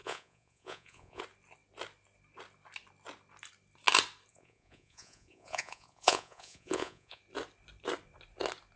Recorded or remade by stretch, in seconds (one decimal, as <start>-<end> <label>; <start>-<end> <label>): 0.0-1.2 remade; 1.2-4.3 recorded; 4.3-7.2 remade; 7.2-8.8 recorded